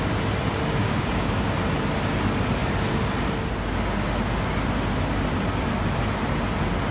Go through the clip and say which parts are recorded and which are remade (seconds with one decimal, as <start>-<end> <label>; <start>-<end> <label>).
0.0-0.8 recorded; 0.8-1.5 remade; 1.5-6.9 recorded